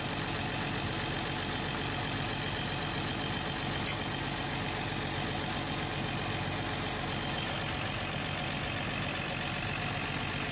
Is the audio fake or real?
real